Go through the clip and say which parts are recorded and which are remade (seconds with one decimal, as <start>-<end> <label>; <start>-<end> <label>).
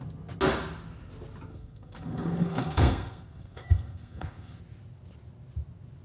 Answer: 0.0-1.5 recorded; 1.5-4.6 remade; 4.6-6.0 recorded